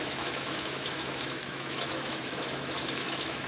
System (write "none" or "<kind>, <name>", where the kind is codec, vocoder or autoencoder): autoencoder, DAC-VAE